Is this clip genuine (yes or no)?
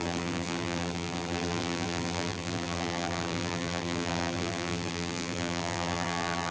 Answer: no